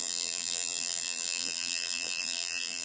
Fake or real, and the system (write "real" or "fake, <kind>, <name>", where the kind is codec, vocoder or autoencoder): fake, vocoder, BigVGAN v2